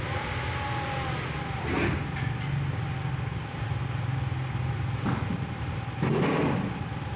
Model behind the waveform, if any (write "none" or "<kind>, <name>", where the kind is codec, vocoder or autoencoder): none